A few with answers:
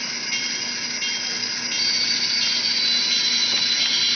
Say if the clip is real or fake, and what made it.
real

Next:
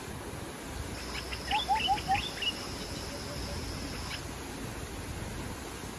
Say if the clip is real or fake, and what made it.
real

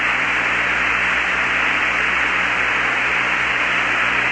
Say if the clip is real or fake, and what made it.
real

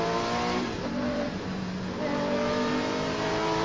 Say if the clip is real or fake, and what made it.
fake, vocoder, BigVGAN v2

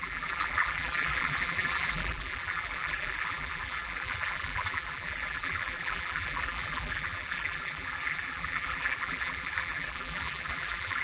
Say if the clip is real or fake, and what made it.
fake, vocoder, BigVGAN v2